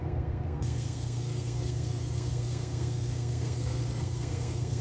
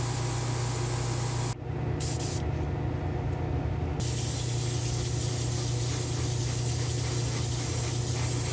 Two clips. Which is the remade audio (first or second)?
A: first